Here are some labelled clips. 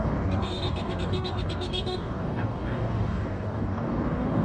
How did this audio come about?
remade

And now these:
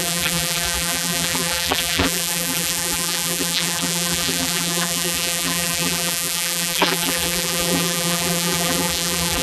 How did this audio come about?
remade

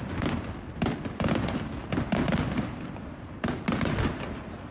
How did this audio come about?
recorded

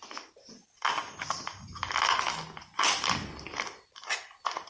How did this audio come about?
recorded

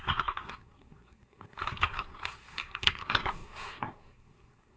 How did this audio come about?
remade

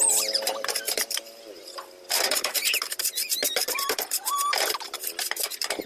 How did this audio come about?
recorded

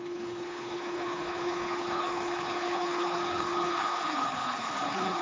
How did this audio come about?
remade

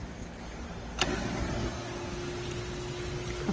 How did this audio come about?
recorded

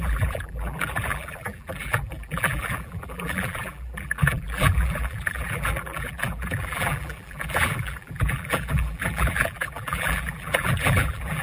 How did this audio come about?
remade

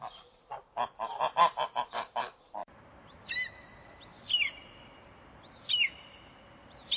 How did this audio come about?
recorded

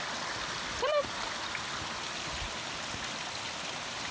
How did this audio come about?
recorded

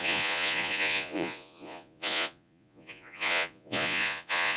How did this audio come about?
remade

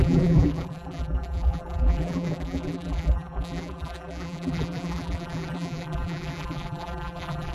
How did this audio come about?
remade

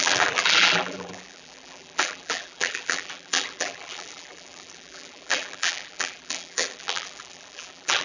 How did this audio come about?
remade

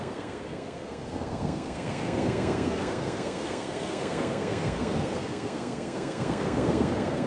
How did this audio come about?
remade